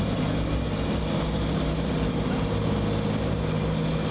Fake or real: real